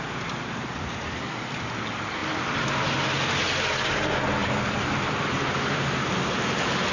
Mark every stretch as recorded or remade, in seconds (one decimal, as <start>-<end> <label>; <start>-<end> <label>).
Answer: 0.0-4.4 recorded; 4.4-6.1 remade; 6.1-6.9 recorded